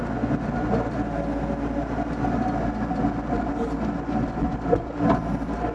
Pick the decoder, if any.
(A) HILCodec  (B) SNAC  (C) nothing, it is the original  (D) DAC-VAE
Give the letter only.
C